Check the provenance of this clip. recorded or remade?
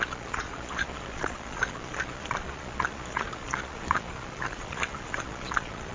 remade